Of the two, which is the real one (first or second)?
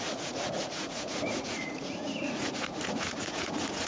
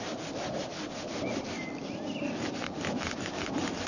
second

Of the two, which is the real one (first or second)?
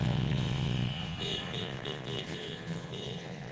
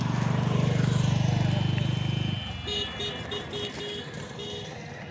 second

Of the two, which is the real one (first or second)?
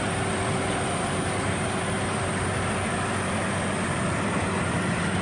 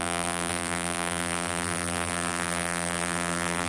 first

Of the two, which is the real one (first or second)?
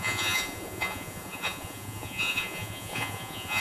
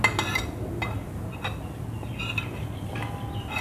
second